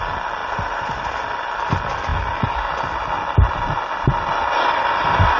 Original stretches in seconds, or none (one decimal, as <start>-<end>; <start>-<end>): 0.0-0.4; 0.9-5.4